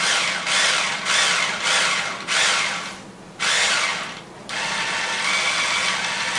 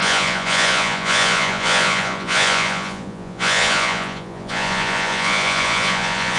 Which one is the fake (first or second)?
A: second